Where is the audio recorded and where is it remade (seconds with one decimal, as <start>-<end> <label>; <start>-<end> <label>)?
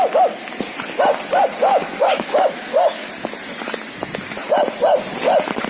0.0-1.7 recorded; 1.7-3.1 remade; 3.1-5.7 recorded